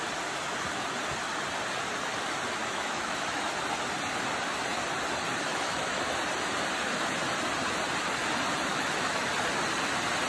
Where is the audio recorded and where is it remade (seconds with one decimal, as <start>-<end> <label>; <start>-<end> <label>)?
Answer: 0.0-2.6 recorded; 2.6-3.6 remade; 3.6-5.5 recorded; 5.5-6.1 remade; 6.1-8.7 recorded; 8.7-9.3 remade; 9.3-10.3 recorded